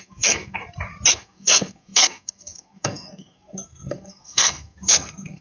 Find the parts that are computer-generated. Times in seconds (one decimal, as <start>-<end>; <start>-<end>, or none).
0.0-0.6; 1.1-5.4

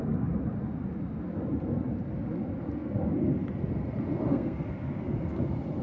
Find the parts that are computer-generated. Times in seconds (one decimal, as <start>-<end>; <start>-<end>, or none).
4.3-5.0